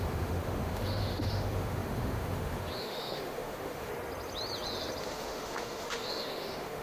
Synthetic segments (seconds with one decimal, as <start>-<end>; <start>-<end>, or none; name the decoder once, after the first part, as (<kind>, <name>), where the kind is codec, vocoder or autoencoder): 0.0-3.9 (autoencoder, DAC-VAE); 5.0-6.8